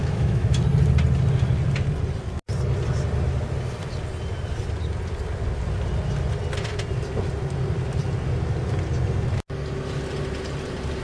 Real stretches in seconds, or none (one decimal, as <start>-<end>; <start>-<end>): 0.6-11.0